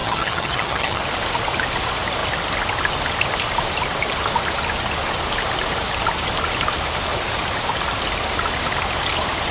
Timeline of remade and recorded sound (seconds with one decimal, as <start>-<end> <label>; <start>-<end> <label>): 0.0-1.0 remade; 1.0-9.5 recorded